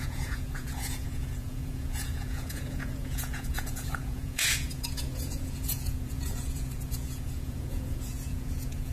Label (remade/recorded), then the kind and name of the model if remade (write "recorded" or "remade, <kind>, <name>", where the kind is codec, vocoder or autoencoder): remade, vocoder, Vocos